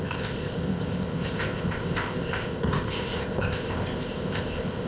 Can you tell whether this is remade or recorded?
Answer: remade